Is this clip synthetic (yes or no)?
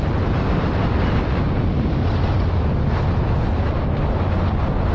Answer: no